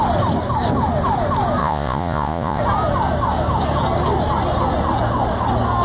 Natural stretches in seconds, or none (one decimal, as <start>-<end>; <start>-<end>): 0.0-1.6; 2.6-5.8

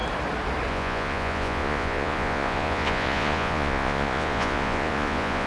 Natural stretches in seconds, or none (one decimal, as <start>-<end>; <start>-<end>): 0.0-0.7

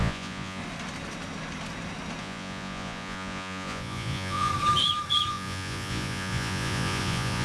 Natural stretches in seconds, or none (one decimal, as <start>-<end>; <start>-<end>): 0.6-2.2; 4.5-5.3